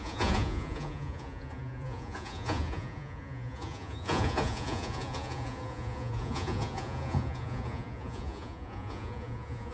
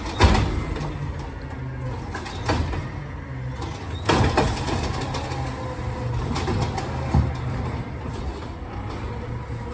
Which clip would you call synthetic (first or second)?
first